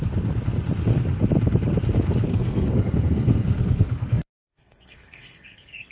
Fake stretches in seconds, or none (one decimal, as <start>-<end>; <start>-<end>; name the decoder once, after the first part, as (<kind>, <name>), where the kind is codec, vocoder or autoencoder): 2.3-5.9 (codec, SNAC)

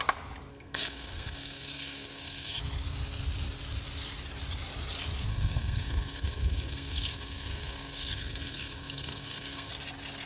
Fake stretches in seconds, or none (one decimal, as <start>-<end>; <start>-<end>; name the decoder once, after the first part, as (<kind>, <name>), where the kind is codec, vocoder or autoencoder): 0.5-2.6 (codec, SNAC); 5.3-9.7

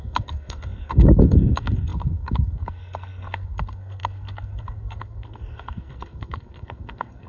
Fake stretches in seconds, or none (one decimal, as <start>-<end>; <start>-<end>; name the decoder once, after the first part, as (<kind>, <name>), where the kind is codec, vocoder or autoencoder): 0.0-7.3 (codec, SNAC)

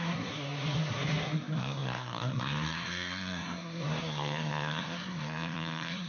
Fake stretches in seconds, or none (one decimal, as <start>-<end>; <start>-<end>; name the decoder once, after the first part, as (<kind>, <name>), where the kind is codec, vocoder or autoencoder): 0.0-6.1 (codec, SNAC)

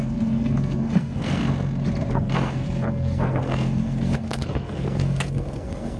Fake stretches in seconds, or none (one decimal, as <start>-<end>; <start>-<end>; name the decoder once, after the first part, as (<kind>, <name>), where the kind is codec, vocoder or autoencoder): 0.0-1.4 (codec, SNAC); 2.1-6.0